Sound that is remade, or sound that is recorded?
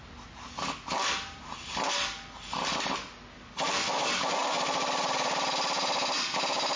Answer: recorded